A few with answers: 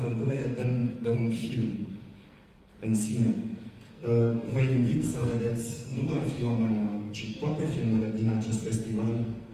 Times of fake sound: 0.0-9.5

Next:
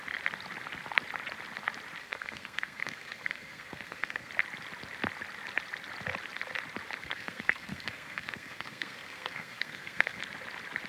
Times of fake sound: 2.0-4.3; 7.0-10.2

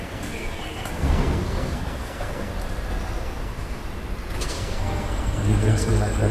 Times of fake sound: 0.0-2.5; 3.2-3.8; 4.4-6.3

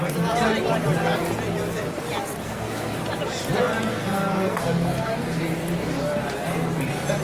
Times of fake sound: 2.4-3.0; 3.9-5.4

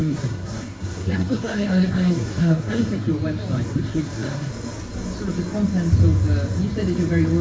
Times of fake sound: 0.0-3.1; 3.7-4.5